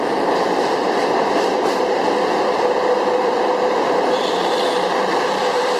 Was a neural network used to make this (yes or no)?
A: yes